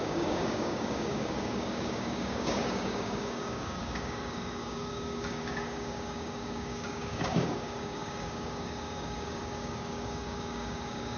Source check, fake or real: fake